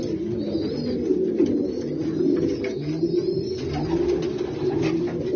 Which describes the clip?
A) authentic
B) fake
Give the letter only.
A